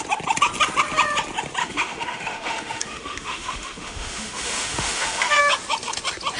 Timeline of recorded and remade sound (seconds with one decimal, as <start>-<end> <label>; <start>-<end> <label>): 0.0-1.6 recorded; 1.6-5.4 remade; 5.4-6.4 recorded